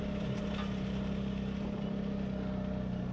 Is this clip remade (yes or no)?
no